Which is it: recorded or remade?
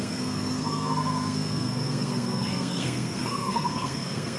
remade